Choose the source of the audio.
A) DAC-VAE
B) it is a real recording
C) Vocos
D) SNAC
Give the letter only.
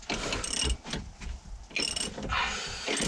B